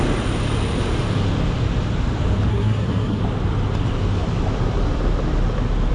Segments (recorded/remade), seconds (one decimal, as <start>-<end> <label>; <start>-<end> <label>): 0.0-2.5 recorded; 2.5-3.2 remade; 3.2-5.9 recorded